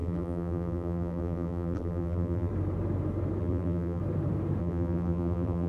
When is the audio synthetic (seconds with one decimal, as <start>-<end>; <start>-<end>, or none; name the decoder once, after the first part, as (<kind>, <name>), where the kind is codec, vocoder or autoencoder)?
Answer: 0.0-2.5 (vocoder, BigVGAN v2); 3.4-4.0; 4.6-5.7